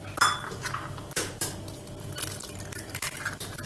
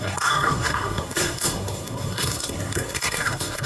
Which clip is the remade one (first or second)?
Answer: second